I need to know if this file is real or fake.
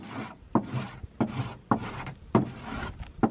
real